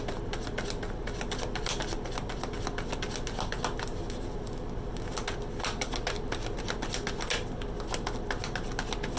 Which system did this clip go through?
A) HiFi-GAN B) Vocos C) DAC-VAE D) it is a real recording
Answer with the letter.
D